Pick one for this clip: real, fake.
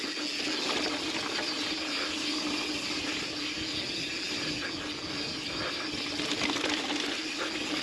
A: real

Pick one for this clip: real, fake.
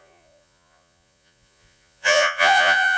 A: fake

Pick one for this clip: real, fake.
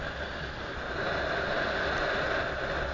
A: real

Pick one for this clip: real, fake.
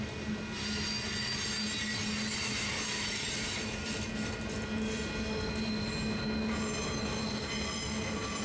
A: real